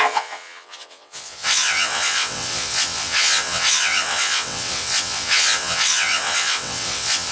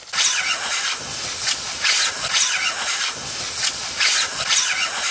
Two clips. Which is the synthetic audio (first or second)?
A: first